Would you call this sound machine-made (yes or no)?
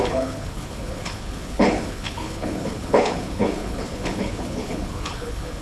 yes